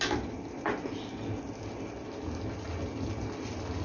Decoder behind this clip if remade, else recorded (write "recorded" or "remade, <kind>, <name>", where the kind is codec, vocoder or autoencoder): recorded